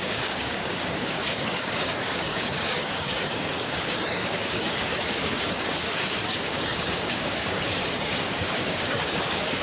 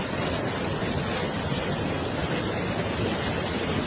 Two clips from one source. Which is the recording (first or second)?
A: second